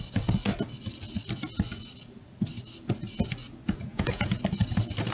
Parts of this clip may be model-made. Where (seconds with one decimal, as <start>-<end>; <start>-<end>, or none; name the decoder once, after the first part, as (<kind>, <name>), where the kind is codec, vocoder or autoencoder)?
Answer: 3.9-4.4 (vocoder, Vocos)